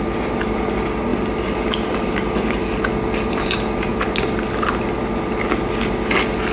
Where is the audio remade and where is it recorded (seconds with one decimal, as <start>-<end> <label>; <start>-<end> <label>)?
0.0-6.5 recorded